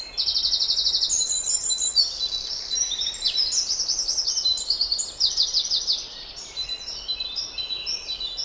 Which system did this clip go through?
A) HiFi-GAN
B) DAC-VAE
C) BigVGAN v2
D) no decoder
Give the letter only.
D